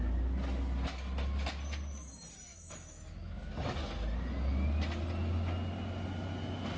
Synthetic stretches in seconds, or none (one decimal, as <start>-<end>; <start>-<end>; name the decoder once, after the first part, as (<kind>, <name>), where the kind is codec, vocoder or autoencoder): 2.5-3.5 (autoencoder, DAC-VAE)